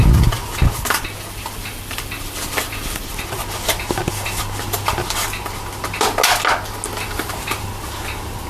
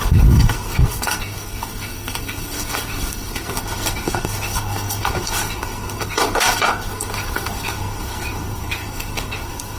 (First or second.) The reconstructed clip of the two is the second